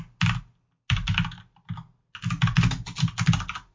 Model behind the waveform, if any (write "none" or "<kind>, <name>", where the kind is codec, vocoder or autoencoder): none